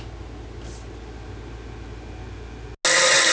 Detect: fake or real real